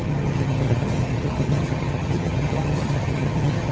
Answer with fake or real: fake